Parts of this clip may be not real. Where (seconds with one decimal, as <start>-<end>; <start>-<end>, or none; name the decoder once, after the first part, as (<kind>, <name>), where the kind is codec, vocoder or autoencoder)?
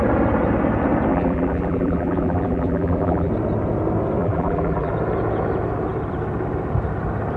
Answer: 1.1-3.3 (vocoder, BigVGAN v2); 4.2-4.9